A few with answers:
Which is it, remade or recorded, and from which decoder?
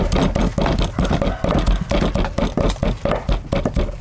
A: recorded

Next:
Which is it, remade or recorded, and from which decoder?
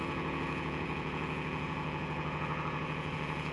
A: remade, vocoder, Vocos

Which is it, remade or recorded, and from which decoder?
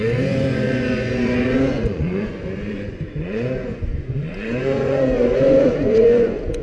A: remade, vocoder, Vocos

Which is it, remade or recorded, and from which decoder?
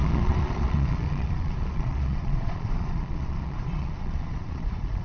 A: remade, vocoder, Vocos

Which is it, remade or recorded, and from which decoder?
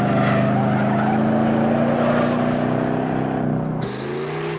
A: recorded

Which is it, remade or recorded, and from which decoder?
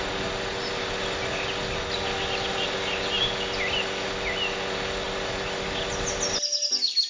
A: recorded